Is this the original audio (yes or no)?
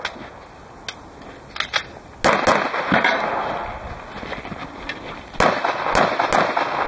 yes